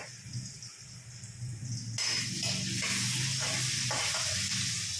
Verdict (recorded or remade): recorded